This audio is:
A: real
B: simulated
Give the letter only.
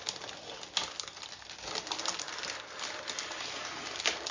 A